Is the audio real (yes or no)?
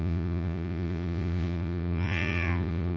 no